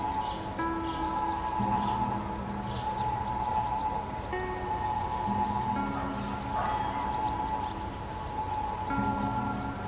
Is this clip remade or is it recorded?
recorded